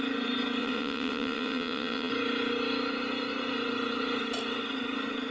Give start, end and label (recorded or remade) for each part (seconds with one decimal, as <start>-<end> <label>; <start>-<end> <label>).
0.0-0.6 recorded; 0.6-2.1 remade; 2.1-5.3 recorded